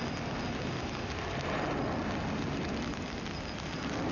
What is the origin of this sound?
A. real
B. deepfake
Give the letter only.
A